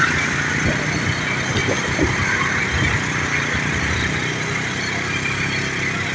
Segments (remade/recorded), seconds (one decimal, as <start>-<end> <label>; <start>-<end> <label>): 0.0-1.6 recorded; 1.6-2.6 remade; 2.6-6.1 recorded